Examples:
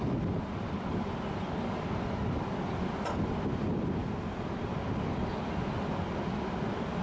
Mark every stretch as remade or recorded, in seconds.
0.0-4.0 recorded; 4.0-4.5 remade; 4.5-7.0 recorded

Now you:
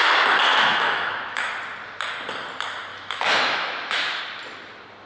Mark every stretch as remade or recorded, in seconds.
0.0-0.5 recorded; 0.5-1.5 remade; 1.5-2.9 recorded; 2.9-4.2 remade; 4.2-5.1 recorded